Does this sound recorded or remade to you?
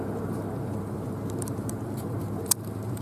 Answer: remade